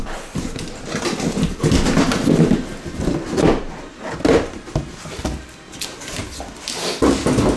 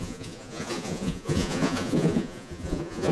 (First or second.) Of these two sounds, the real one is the first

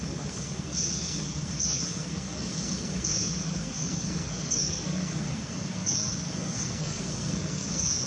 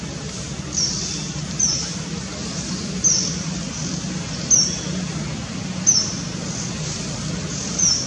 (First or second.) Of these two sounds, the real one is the second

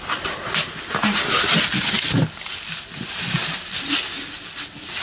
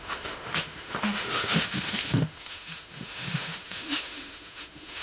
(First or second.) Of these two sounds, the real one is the first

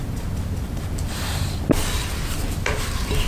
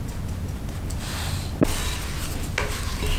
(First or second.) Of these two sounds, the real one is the second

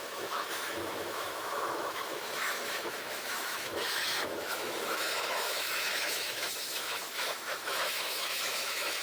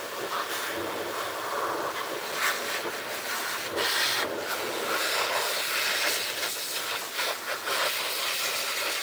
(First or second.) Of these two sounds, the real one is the second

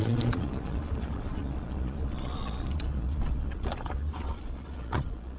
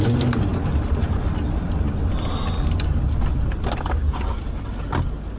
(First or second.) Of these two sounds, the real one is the second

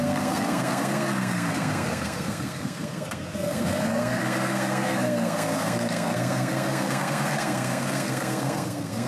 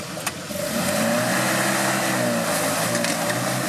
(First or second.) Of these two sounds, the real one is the second